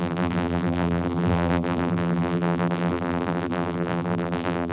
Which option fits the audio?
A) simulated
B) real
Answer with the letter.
A